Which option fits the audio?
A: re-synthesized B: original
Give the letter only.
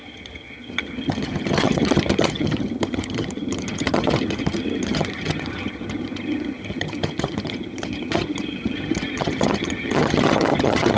A